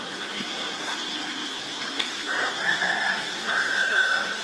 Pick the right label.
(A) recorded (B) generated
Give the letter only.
B